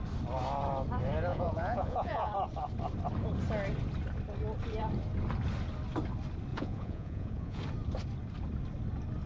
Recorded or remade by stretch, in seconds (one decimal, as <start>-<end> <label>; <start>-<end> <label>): 0.0-1.3 recorded; 1.3-2.3 remade; 2.3-6.5 recorded; 6.5-7.6 remade; 7.6-9.3 recorded